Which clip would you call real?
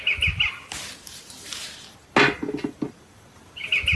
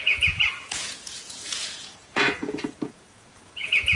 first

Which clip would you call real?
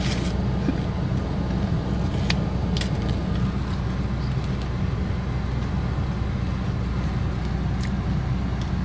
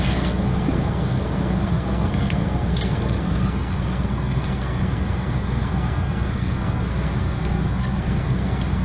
first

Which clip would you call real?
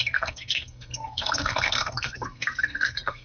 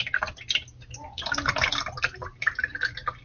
second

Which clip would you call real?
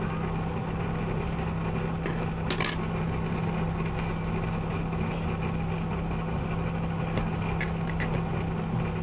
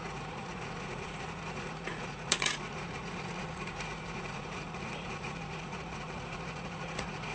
first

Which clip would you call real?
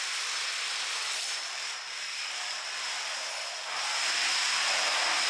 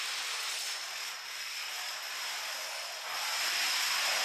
second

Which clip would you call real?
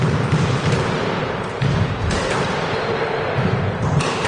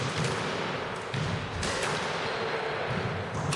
second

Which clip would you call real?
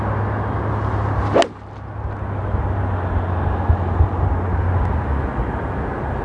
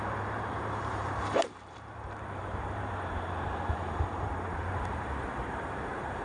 first